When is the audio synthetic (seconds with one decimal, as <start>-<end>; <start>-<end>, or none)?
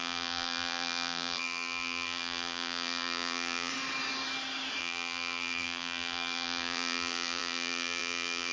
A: 0.0-3.7; 4.8-8.5